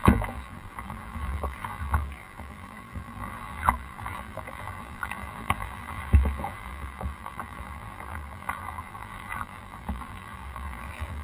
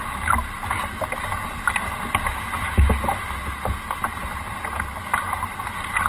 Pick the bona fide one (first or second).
second